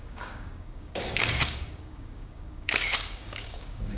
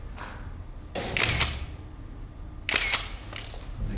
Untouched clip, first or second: second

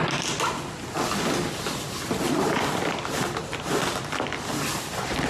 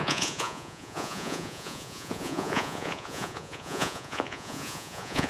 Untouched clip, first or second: first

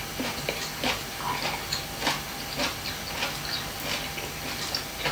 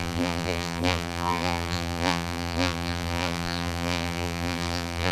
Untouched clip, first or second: first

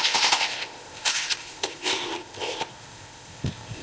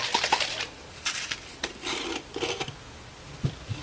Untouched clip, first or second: second